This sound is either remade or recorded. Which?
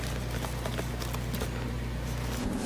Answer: recorded